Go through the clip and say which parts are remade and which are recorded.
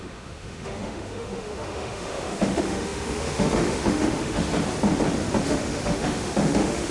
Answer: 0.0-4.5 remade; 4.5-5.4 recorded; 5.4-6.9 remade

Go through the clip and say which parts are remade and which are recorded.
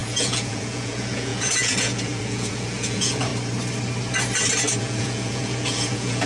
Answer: 0.0-3.3 remade; 3.3-4.8 recorded; 4.8-6.3 remade